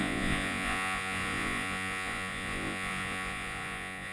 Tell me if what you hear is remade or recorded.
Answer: remade